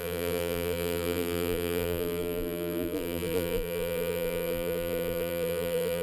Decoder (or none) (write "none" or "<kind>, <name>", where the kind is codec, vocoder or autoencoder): vocoder, BigVGAN v2